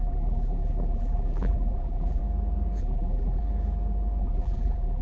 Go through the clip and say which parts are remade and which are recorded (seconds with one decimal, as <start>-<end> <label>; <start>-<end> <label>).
0.0-2.2 remade; 2.2-2.8 recorded; 2.8-3.4 remade; 3.4-4.2 recorded; 4.2-5.0 remade